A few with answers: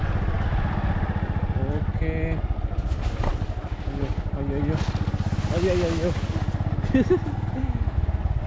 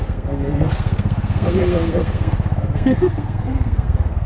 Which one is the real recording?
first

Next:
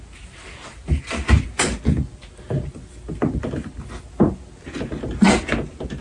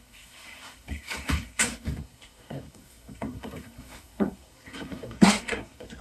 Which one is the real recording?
first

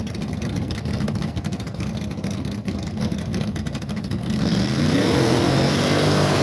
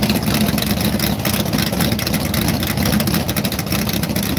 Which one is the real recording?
second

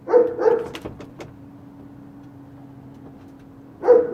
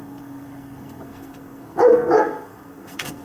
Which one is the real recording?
first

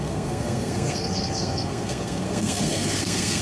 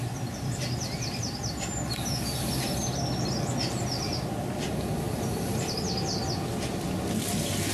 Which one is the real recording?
second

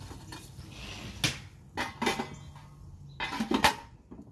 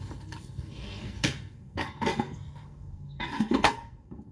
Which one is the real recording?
first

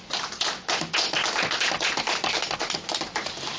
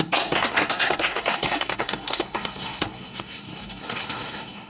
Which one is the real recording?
first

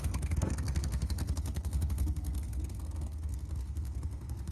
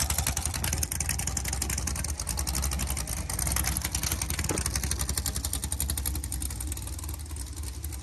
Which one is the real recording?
second